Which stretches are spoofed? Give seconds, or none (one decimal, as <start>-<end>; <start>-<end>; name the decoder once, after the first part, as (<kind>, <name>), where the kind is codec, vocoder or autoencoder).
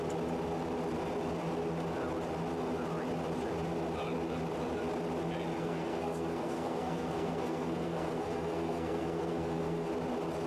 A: 5.6-9.9 (codec, SNAC)